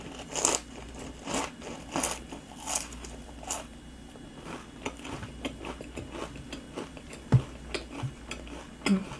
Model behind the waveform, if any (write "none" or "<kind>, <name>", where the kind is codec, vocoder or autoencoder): none